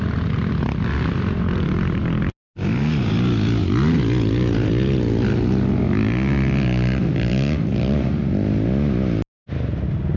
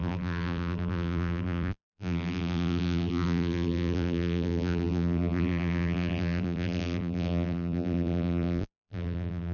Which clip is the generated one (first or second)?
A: second